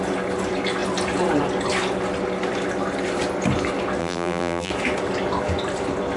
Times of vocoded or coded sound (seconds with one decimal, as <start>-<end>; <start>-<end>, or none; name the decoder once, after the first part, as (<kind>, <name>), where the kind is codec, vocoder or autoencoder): 4.0-4.7 (vocoder, BigVGAN v2)